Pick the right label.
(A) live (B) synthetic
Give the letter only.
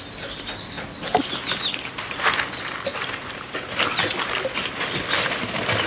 A